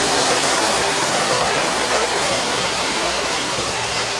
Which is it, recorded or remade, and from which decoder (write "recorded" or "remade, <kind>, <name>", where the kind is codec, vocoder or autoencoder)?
remade, codec, SNAC